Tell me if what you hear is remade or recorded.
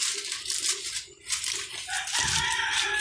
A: recorded